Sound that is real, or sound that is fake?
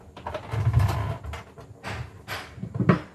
real